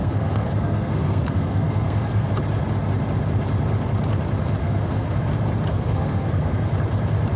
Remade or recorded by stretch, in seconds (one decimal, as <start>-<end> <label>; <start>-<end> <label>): 0.0-2.3 remade; 2.3-4.6 recorded; 4.6-5.2 remade; 5.2-5.7 recorded; 5.7-6.7 remade; 6.7-7.4 recorded